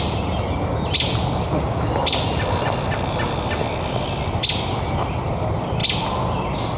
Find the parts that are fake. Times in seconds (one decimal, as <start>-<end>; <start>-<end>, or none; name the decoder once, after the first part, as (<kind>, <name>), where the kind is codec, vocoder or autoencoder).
none